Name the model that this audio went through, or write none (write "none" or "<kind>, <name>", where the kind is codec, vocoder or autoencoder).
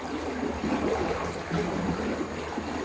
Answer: none